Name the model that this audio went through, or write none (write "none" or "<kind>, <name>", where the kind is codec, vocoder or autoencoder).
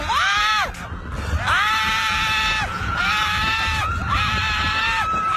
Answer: none